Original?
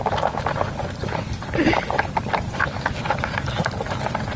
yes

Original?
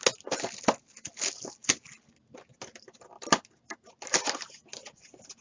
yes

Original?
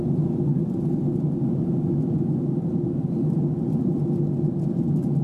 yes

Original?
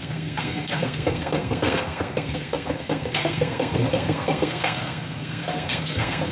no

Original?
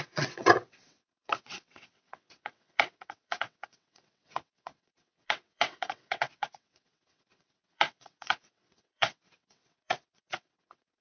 no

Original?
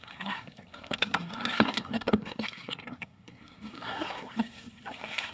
no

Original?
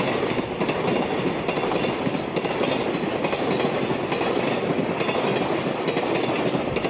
yes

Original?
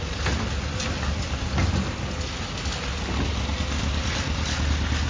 yes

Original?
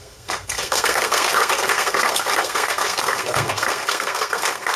no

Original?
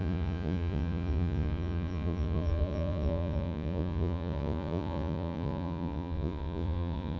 no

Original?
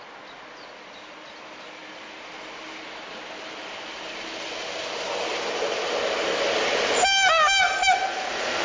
yes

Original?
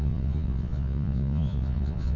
no